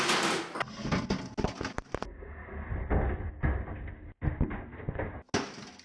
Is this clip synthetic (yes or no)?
no